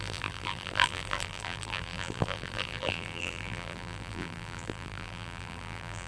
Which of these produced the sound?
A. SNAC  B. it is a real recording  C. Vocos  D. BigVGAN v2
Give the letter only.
D